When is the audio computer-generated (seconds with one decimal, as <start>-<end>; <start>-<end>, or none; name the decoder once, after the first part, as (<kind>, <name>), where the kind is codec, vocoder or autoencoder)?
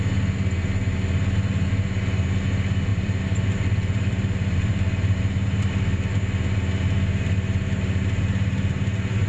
2.9-5.2 (vocoder, BigVGAN v2)